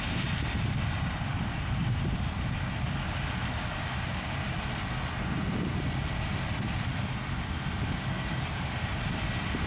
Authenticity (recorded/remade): recorded